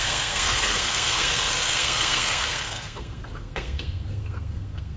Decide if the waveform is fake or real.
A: fake